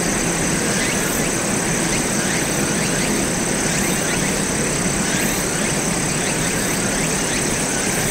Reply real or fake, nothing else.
real